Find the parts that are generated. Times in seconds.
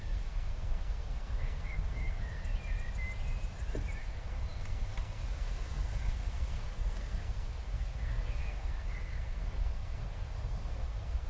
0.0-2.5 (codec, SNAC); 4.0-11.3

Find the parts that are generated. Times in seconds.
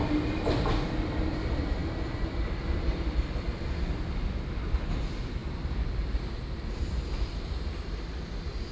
none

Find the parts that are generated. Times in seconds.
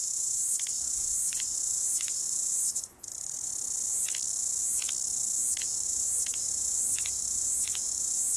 0.0-3.5 (vocoder, Vocos); 5.6-8.4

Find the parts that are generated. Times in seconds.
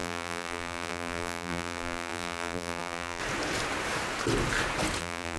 0.0-3.2 (vocoder, BigVGAN v2); 5.0-5.4